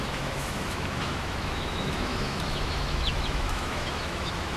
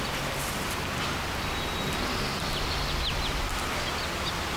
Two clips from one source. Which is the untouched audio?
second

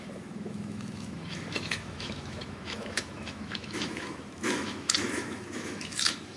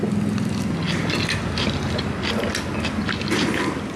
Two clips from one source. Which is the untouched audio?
second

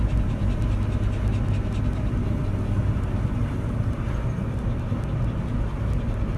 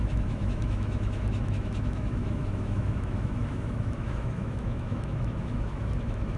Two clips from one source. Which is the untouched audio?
first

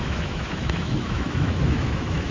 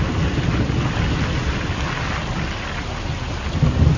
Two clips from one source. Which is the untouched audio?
second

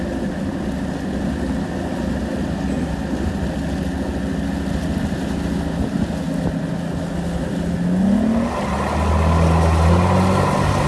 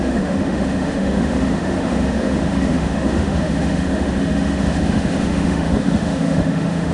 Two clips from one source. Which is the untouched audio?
first